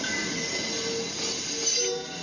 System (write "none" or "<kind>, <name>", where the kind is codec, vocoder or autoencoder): none